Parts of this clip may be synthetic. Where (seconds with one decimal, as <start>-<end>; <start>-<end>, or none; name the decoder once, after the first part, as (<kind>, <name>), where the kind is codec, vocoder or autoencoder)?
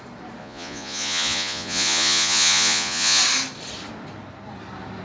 0.4-3.2 (vocoder, Vocos)